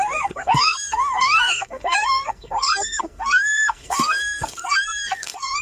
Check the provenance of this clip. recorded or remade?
remade